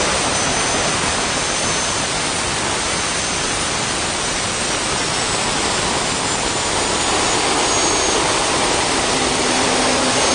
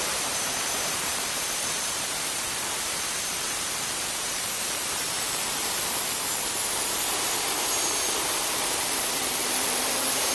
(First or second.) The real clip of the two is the first